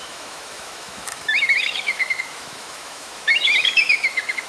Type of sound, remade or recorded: remade